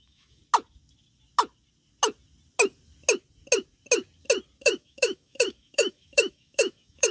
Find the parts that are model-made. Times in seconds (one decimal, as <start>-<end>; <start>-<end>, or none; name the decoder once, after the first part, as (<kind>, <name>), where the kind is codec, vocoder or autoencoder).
0.0-0.4 (autoencoder, DAC-VAE); 4.6-7.1